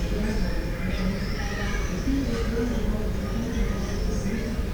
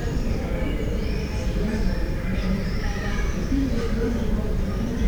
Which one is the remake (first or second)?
second